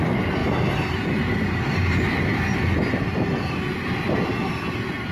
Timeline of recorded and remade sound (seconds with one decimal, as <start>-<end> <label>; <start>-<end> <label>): 0.0-5.1 recorded